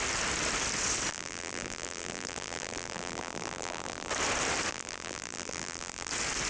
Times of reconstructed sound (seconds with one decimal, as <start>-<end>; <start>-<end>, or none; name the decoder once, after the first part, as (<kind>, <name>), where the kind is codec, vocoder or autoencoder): 1.1-4.1 (vocoder, BigVGAN v2); 4.7-6.1